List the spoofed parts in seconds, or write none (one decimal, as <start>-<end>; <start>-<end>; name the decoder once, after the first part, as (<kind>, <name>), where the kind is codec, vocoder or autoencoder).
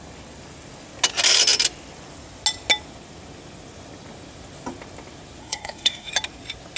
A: 5.4-6.1 (codec, SNAC)